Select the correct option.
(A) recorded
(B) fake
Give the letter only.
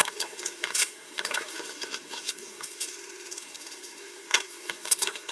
B